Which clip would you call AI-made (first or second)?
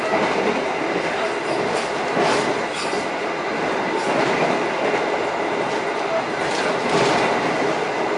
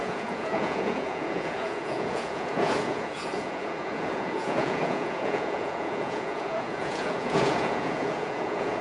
second